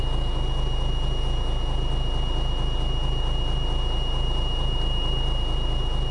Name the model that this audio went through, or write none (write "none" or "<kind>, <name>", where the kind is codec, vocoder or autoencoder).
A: none